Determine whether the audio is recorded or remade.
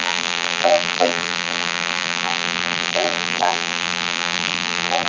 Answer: remade